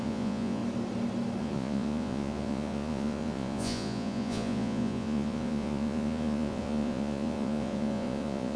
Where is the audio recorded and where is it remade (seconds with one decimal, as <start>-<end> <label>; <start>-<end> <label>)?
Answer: 0.0-0.6 remade; 0.6-1.4 recorded; 1.4-8.6 remade